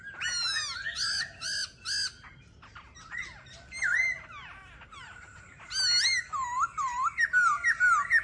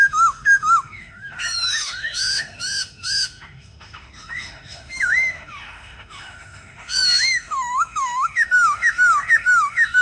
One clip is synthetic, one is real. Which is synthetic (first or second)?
second